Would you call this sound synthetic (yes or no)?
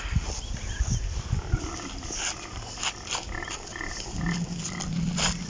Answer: no